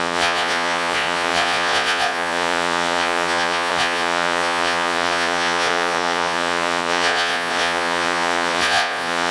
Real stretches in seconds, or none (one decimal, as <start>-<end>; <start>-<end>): none